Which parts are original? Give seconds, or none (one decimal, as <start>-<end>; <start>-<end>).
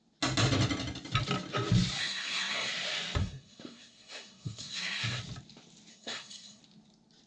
0.0-2.0; 2.7-3.2; 5.2-5.9; 6.6-7.3